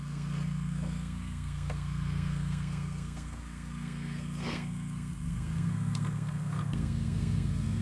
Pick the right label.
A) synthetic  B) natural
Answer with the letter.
A